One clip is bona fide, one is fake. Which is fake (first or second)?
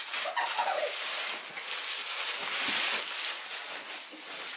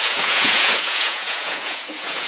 second